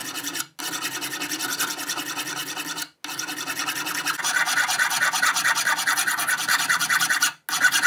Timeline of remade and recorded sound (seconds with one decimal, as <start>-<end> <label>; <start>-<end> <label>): 0.0-0.6 remade; 0.6-7.9 recorded